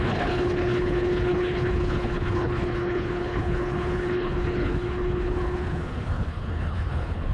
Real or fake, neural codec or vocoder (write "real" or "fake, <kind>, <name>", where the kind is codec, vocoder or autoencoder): fake, codec, HILCodec